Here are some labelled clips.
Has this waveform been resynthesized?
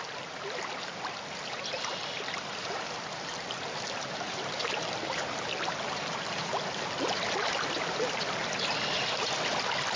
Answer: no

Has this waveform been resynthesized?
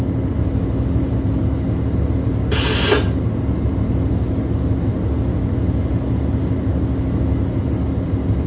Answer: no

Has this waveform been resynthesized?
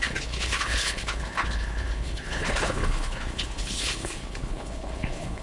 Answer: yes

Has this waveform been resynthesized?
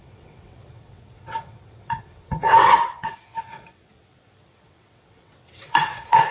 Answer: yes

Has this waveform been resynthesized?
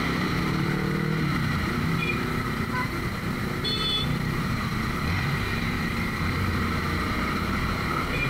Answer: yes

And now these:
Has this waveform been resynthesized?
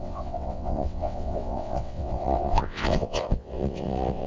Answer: yes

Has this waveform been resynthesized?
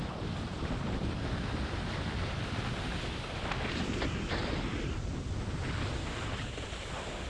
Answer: no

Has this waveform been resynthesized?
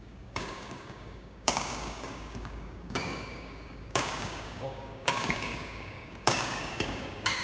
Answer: yes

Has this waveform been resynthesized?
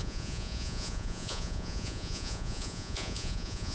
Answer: yes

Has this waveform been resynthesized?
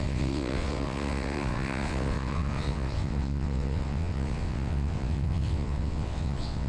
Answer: yes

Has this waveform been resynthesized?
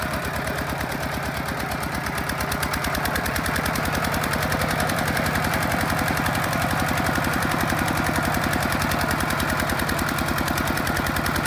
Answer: yes